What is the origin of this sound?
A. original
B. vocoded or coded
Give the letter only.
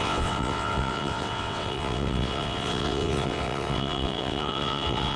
B